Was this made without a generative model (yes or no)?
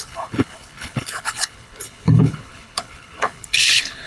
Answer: no